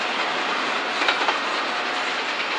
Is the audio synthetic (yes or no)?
no